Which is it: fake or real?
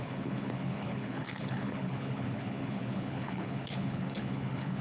fake